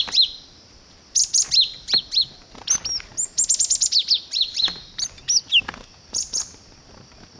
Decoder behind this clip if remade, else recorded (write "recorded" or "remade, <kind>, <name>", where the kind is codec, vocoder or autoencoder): recorded